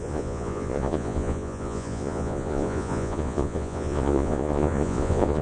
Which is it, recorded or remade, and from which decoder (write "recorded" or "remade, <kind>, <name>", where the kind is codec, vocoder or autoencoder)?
remade, vocoder, Vocos